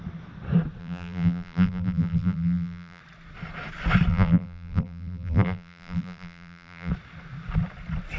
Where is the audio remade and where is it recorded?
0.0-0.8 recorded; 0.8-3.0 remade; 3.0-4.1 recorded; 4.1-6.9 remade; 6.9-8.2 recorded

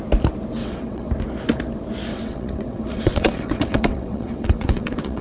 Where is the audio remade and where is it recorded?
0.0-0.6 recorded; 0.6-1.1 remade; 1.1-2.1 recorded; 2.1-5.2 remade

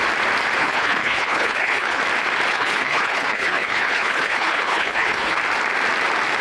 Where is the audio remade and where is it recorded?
0.0-0.6 recorded; 0.6-2.0 remade; 2.0-2.5 recorded; 2.5-5.4 remade; 5.4-6.4 recorded

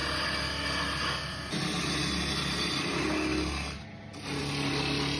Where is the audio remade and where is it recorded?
0.0-5.2 recorded